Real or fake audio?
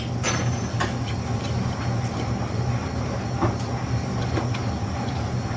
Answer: real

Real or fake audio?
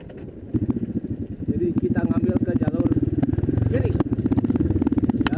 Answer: real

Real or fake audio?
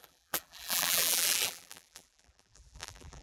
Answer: fake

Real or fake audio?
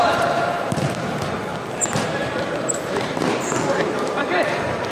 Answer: fake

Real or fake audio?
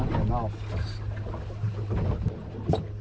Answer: real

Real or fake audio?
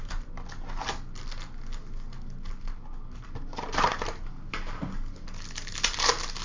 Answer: real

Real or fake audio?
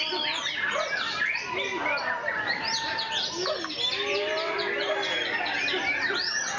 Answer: real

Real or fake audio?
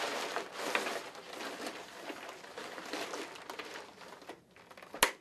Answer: real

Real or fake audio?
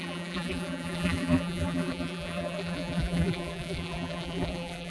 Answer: fake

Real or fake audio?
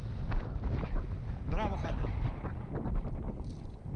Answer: real